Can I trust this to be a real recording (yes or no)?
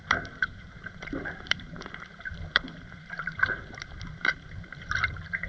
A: no